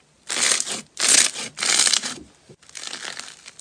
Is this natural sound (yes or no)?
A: yes